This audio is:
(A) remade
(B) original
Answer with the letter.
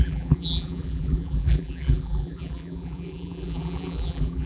A